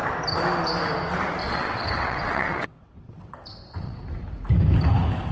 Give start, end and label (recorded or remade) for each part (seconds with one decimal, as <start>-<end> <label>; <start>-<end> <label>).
0.0-1.4 recorded; 1.4-4.0 remade; 4.0-5.3 recorded